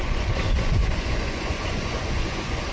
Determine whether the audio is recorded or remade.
remade